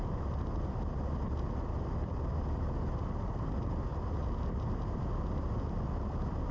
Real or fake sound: real